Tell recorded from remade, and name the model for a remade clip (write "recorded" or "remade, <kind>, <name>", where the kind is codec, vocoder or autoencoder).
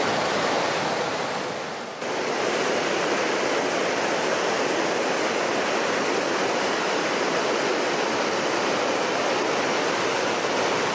recorded